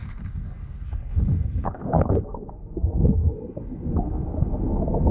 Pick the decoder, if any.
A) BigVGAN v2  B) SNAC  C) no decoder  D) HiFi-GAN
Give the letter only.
B